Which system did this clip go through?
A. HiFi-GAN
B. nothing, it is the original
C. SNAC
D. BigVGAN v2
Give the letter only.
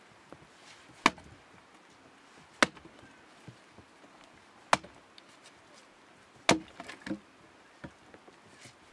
B